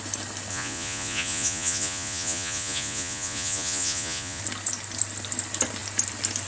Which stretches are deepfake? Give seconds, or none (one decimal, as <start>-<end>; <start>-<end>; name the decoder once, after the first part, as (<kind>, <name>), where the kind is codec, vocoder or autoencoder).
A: 0.5-4.4 (vocoder, Vocos)